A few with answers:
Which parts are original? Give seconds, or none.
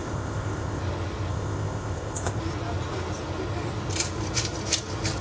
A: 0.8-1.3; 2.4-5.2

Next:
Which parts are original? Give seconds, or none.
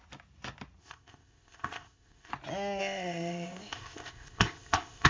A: 0.0-0.8; 2.3-2.8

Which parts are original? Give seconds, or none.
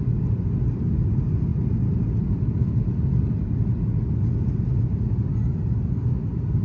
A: 0.0-6.6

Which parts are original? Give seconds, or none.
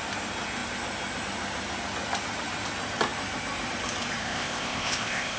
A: 0.0-4.2